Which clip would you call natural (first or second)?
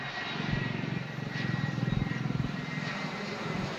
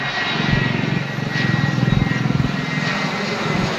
second